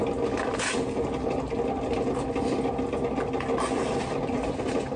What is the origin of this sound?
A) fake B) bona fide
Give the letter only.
B